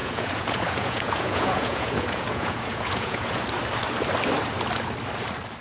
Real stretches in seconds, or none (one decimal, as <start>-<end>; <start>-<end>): 3.4-5.6